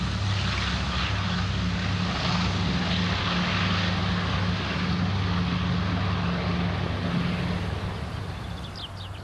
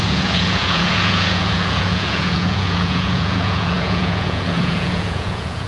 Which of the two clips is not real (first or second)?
second